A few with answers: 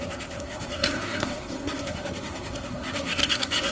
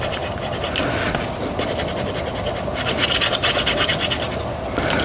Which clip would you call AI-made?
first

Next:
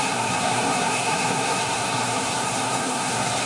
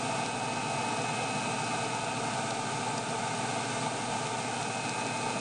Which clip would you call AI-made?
first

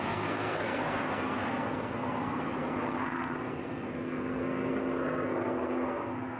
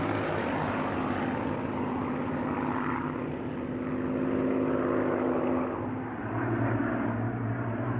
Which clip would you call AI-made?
first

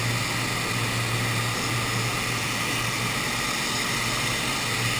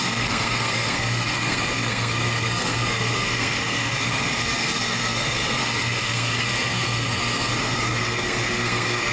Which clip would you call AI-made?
second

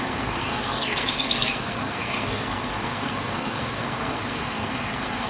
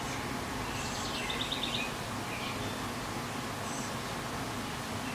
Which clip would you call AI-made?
first